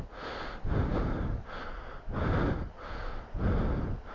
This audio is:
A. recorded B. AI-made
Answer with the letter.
A